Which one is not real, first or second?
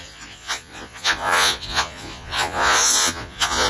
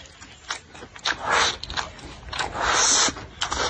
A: first